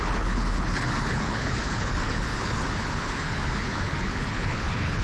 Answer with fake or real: fake